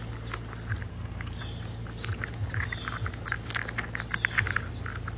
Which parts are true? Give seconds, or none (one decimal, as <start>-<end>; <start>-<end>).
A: 0.0-0.9; 1.4-5.2